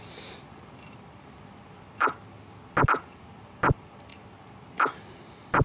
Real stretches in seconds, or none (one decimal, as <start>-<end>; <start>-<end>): 2.0-3.0; 4.1-5.1